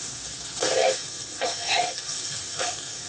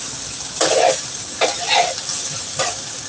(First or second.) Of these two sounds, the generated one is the first